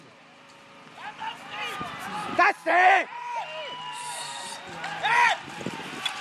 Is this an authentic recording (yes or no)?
yes